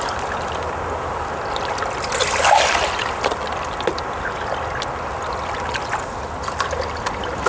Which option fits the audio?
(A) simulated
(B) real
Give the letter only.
B